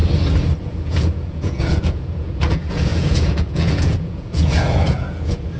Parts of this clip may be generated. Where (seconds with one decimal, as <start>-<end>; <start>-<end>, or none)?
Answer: 0.6-5.6